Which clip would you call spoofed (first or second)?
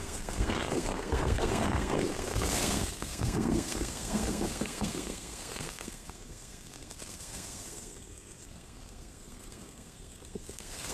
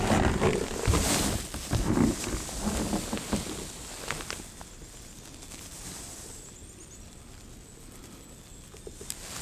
first